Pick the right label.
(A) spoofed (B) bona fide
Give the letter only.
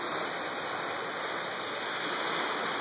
B